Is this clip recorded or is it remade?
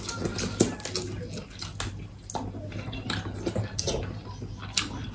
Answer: recorded